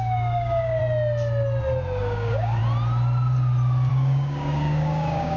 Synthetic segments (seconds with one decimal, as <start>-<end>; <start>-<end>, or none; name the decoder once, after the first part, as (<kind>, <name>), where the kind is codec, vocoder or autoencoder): 0.0-0.8 (codec, DAC); 2.0-2.6; 3.9-5.4